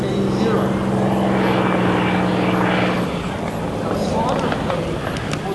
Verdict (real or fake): real